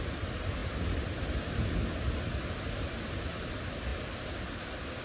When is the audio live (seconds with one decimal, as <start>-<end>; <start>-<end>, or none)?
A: 0.0-5.0